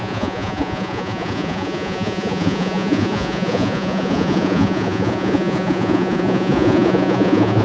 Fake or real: fake